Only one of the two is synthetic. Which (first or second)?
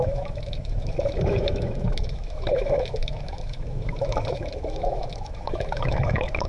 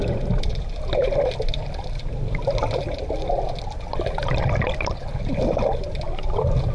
first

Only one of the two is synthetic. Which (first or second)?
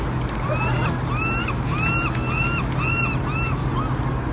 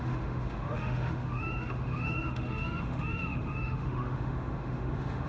second